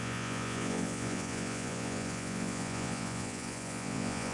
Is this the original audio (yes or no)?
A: no